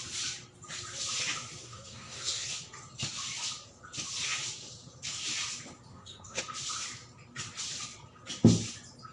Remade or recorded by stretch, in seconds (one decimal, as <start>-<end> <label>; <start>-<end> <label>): 0.0-1.6 recorded; 1.6-2.5 remade; 2.5-5.9 recorded; 5.9-6.4 remade; 6.4-9.1 recorded